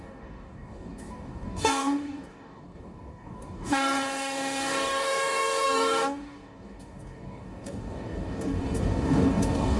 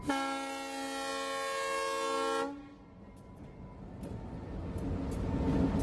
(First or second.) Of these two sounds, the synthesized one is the first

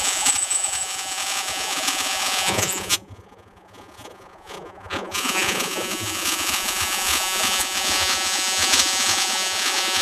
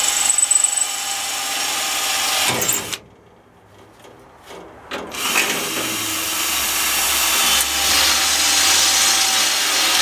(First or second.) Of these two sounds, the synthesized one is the first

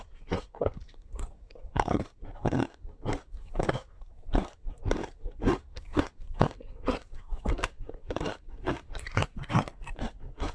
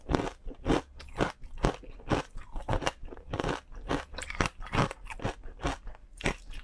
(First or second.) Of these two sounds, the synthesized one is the first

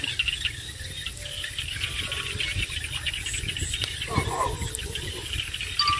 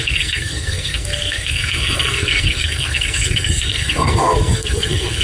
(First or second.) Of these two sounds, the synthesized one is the second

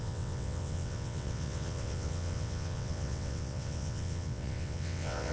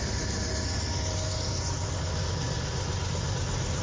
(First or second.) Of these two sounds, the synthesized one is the first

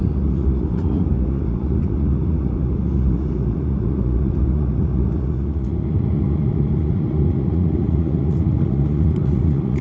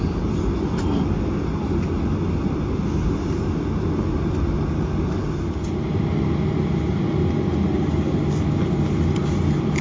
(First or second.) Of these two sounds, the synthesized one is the first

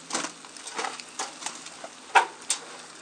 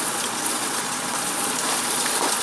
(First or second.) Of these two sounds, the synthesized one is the second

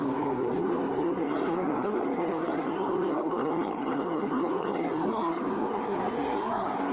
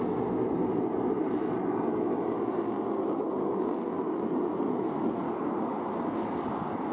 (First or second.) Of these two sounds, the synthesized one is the first